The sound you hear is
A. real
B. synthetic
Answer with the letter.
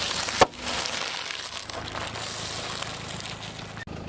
A